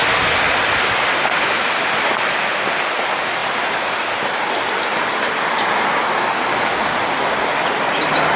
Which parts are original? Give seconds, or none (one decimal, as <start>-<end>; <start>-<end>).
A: 0.0-8.4